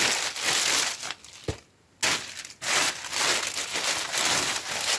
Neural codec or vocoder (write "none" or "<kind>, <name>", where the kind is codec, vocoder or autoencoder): none